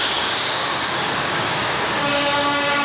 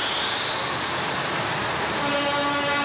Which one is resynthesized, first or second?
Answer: first